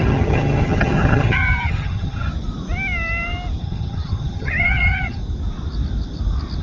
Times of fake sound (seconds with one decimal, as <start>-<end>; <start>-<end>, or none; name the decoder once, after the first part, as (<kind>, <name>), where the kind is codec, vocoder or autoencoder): 0.0-2.3 (vocoder, HiFi-GAN); 3.6-5.2